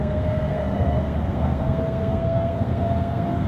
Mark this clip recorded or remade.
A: remade